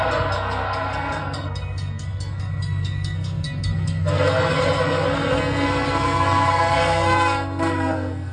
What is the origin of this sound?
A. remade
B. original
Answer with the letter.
A